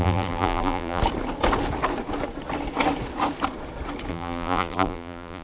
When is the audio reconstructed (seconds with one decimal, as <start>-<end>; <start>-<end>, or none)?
0.0-1.0; 4.1-5.4